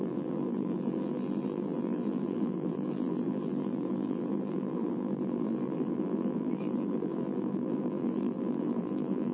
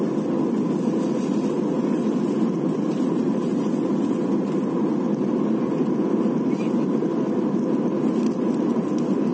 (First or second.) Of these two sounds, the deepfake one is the first